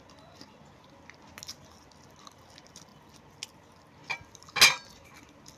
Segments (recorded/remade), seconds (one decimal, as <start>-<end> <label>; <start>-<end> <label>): 0.0-5.6 recorded